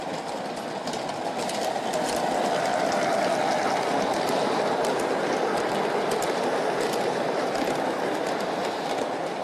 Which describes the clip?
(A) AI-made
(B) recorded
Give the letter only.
B